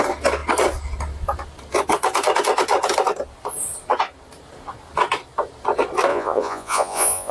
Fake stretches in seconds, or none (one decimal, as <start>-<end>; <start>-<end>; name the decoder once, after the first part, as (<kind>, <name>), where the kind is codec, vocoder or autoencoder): 6.1-7.3 (vocoder, Vocos)